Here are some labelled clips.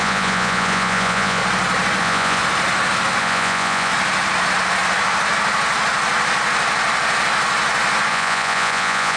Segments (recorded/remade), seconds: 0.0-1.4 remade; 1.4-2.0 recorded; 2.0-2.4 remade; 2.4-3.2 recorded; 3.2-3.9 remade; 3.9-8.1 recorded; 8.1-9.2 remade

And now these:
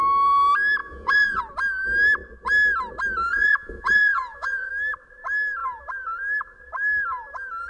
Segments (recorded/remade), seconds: 0.0-0.8 recorded; 0.8-1.4 remade; 1.4-3.3 recorded; 3.3-4.7 remade; 4.7-7.7 recorded

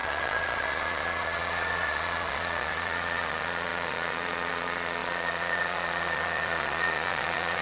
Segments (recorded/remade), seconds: 0.0-7.6 remade

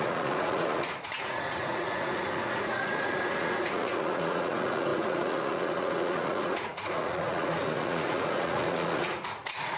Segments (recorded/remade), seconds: 0.0-9.8 remade

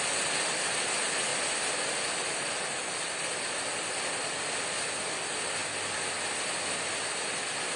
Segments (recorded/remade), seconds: 0.0-7.8 recorded

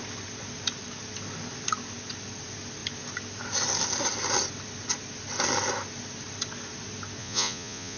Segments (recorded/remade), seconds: 0.0-7.2 recorded; 7.2-8.0 remade

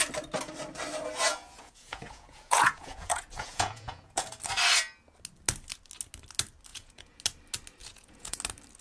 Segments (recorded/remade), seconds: 0.0-1.3 recorded; 1.3-4.4 remade; 4.4-6.7 recorded; 6.7-7.2 remade; 7.2-7.8 recorded; 7.8-8.4 remade; 8.4-8.8 recorded